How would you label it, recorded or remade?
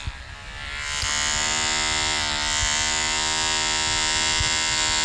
recorded